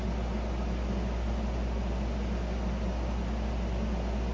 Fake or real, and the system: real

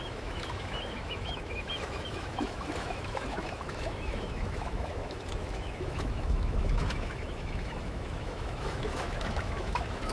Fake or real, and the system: fake, autoencoder, DAC-VAE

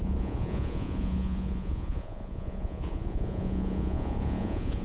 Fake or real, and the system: fake, vocoder, Vocos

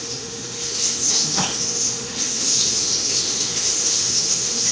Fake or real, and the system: fake, autoencoder, DAC-VAE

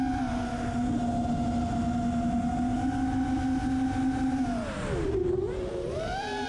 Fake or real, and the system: real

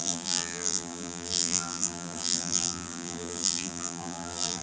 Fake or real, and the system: fake, vocoder, BigVGAN v2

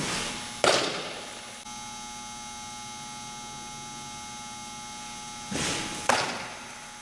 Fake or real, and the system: real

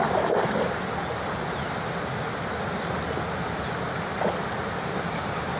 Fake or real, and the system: real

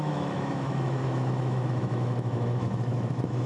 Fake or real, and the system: fake, autoencoder, DAC-VAE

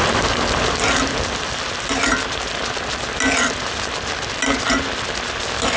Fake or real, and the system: real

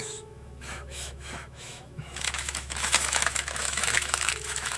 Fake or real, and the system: fake, autoencoder, DAC-VAE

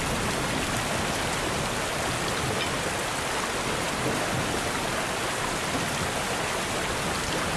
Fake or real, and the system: real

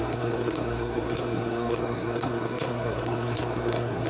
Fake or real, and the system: fake, codec, SNAC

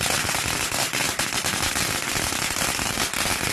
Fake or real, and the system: real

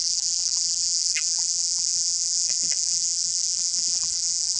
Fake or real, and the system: fake, vocoder, BigVGAN v2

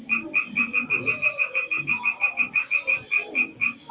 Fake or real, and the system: real